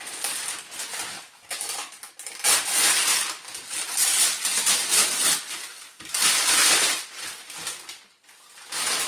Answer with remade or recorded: recorded